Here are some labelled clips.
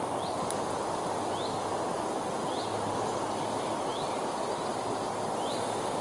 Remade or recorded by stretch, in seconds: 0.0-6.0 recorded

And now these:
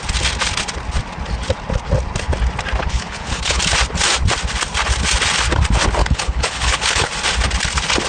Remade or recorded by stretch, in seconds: 0.0-2.8 recorded; 2.8-3.6 remade; 3.6-6.0 recorded; 6.0-7.1 remade; 7.1-8.1 recorded

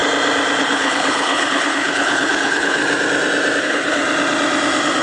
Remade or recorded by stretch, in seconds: 0.0-0.6 recorded; 0.6-2.8 remade; 2.8-3.6 recorded; 3.6-4.0 remade; 4.0-5.0 recorded

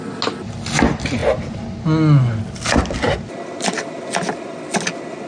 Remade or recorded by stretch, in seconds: 0.0-5.3 recorded

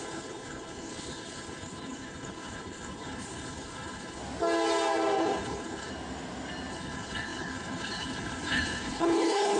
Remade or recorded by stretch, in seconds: 0.0-4.2 remade; 4.2-5.2 recorded; 5.2-5.9 remade; 5.9-6.7 recorded; 6.7-9.6 remade

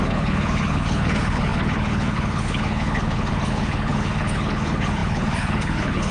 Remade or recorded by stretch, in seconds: 0.0-6.1 remade

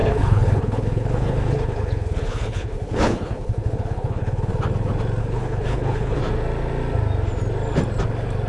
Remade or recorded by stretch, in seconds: 0.0-4.5 remade; 4.5-5.2 recorded; 5.2-6.2 remade; 6.2-8.5 recorded